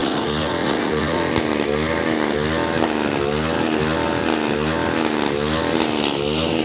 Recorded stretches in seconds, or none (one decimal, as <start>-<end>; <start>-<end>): 1.3-6.6